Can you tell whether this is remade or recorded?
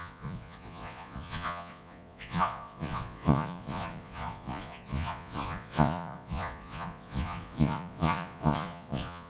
remade